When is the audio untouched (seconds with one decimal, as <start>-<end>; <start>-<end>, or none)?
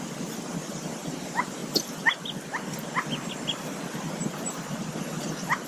0.0-5.7